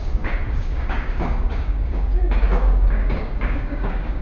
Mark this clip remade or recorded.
remade